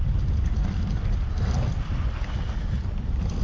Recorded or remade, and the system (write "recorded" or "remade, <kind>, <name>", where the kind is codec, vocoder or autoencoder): recorded